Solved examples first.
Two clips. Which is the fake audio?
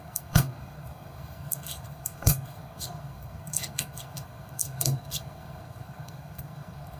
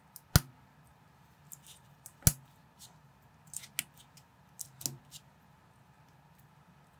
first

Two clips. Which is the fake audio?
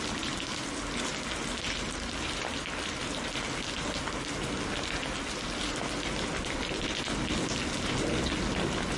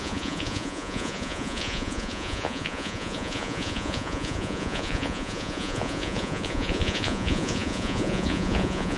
second